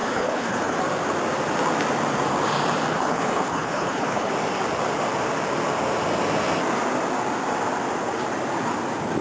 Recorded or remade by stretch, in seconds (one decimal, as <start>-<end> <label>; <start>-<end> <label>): 0.0-0.8 remade; 0.8-2.9 recorded; 2.9-4.3 remade; 4.3-9.2 recorded